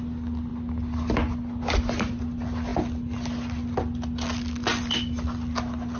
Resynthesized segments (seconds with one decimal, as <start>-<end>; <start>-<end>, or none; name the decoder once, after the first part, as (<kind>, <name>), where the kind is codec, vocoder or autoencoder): none